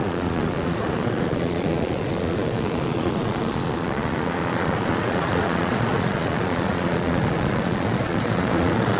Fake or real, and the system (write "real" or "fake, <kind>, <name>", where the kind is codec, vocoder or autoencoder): fake, vocoder, Vocos